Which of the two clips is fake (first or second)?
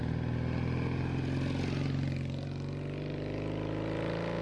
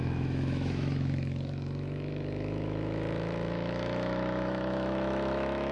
second